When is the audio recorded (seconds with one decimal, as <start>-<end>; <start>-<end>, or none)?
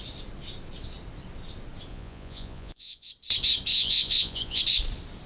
0.0-1.9; 3.1-3.7; 4.6-5.3